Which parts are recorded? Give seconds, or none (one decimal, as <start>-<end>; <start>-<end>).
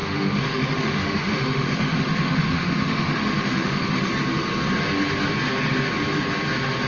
4.1-6.9